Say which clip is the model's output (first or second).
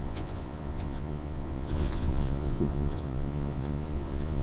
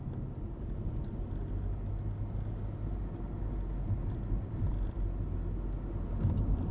first